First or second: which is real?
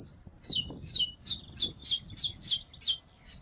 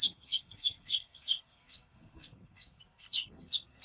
first